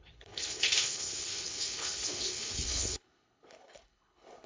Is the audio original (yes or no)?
no